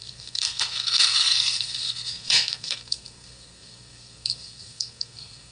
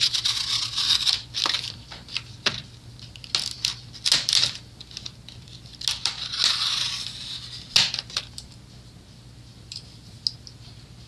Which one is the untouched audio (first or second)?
second